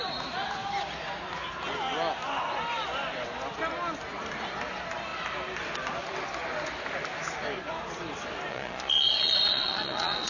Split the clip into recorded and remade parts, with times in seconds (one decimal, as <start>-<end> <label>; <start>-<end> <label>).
0.0-8.5 recorded; 8.5-10.3 remade